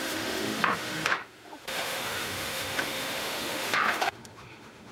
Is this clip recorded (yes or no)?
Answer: no